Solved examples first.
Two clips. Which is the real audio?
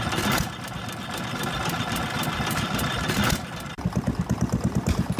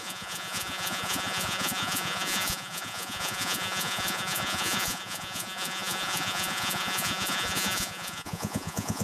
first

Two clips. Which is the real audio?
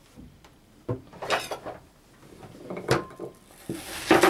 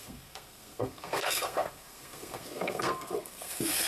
first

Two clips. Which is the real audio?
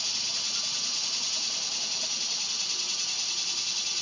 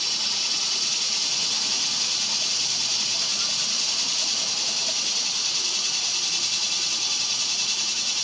first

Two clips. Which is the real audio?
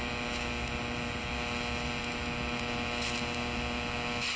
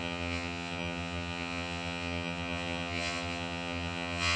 first